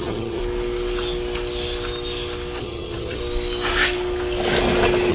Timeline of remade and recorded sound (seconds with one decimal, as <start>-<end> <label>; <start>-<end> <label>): 0.0-0.4 remade; 0.4-2.6 recorded; 2.6-3.2 remade; 3.2-5.1 recorded